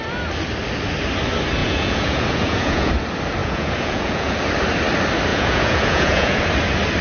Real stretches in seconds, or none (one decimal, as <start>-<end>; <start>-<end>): 0.0-1.6; 2.9-3.4; 4.3-5.3; 6.4-7.0